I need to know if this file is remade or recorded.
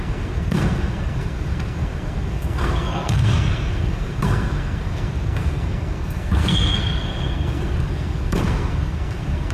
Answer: remade